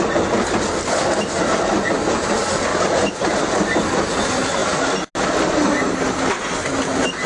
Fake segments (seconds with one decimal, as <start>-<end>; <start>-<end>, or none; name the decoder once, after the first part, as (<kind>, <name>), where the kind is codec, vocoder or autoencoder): 2.7-3.4 (vocoder, BigVGAN v2)